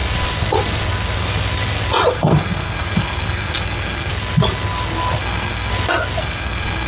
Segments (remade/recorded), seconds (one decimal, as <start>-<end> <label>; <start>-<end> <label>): 0.0-2.1 recorded; 2.1-4.1 remade; 4.1-5.2 recorded; 5.2-5.7 remade; 5.7-6.2 recorded; 6.2-6.9 remade